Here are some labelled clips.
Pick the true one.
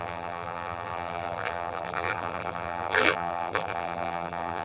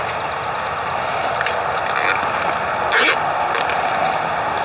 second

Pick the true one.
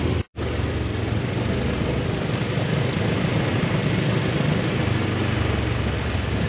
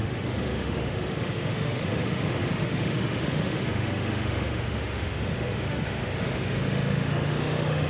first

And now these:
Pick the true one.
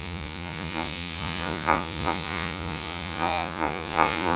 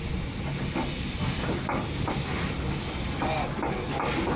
second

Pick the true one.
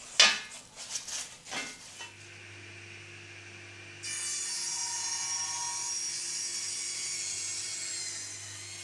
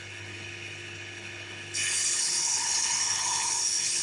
first